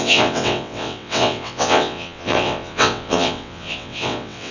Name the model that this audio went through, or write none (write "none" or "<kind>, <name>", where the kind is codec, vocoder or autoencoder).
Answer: vocoder, WaveNeXt